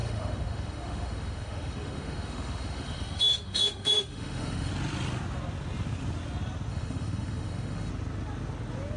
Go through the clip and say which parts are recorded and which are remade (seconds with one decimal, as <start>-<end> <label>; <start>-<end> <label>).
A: 0.0-4.7 remade; 4.7-6.7 recorded; 6.7-7.9 remade; 7.9-9.0 recorded